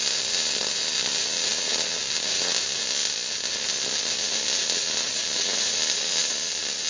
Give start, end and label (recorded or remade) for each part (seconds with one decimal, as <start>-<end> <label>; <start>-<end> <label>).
0.0-3.0 remade; 3.0-5.1 recorded; 5.1-6.9 remade